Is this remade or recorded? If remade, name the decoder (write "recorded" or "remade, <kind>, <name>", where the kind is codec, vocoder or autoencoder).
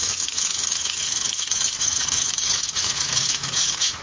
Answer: remade, autoencoder, DAC-VAE